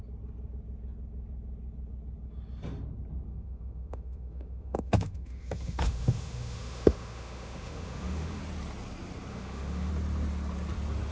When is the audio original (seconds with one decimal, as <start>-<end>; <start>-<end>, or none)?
0.0-3.3; 8.4-9.3; 9.9-11.1